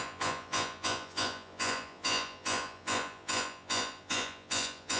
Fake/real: fake